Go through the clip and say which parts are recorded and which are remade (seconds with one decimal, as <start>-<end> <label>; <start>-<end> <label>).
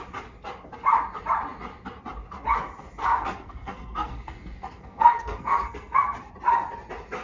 0.0-3.0 recorded; 3.0-6.3 remade; 6.3-7.2 recorded